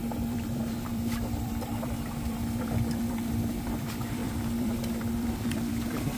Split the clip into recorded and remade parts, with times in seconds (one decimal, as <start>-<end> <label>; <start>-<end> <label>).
0.0-6.2 remade